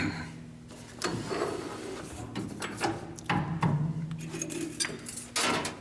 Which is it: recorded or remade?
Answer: recorded